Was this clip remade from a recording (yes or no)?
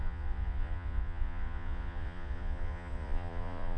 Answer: yes